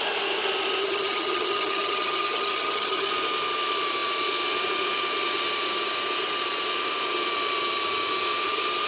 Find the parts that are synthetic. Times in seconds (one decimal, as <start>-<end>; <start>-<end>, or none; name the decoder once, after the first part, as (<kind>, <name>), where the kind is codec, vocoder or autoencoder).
0.8-3.1 (vocoder, HiFi-GAN)